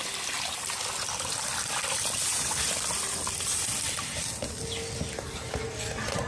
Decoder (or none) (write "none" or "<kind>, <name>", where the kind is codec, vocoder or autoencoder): none